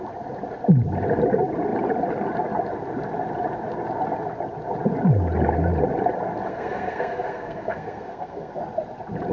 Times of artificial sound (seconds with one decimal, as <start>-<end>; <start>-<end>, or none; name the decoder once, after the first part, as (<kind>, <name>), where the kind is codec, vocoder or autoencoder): 6.5-8.6 (codec, SNAC)